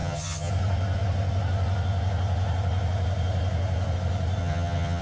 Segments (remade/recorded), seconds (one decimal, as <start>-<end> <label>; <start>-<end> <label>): 0.0-0.5 remade; 0.5-4.4 recorded; 4.4-5.0 remade